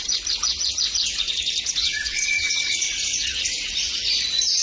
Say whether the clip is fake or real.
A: fake